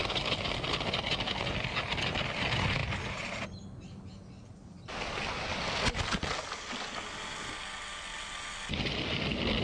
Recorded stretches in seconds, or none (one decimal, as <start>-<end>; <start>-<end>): 0.0-9.6